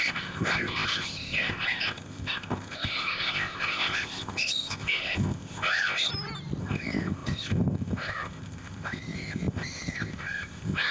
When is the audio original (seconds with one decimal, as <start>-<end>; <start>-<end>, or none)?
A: 6.1-6.6